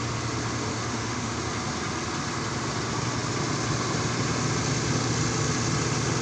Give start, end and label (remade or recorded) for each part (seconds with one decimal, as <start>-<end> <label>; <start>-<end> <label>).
0.0-0.7 recorded; 0.7-1.4 remade; 1.4-6.2 recorded